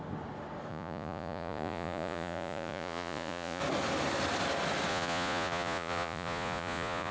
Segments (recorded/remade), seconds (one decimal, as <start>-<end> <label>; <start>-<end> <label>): 0.0-0.7 recorded; 0.7-3.6 remade; 3.6-4.9 recorded; 4.9-7.1 remade